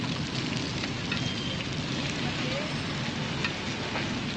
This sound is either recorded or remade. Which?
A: recorded